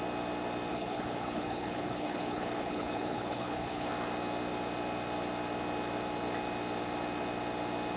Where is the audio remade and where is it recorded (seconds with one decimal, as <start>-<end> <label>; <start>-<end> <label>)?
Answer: 0.0-0.7 recorded; 0.7-3.9 remade; 3.9-8.0 recorded